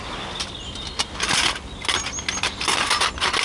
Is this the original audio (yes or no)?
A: yes